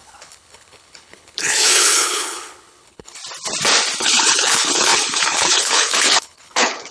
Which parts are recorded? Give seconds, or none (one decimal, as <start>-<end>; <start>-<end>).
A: 3.2-4.0